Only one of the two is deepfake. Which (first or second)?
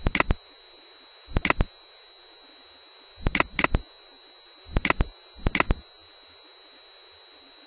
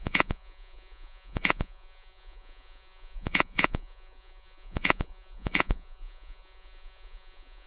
second